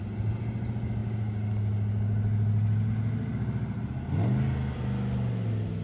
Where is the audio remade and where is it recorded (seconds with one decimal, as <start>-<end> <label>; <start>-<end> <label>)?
0.0-5.8 recorded